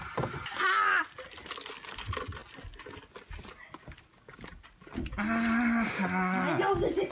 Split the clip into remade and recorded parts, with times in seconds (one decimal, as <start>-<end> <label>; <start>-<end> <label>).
0.0-7.1 recorded